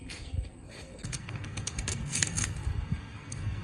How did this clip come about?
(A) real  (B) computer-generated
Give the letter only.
B